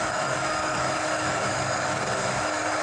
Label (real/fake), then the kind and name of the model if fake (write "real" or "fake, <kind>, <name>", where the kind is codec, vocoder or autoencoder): fake, codec, DAC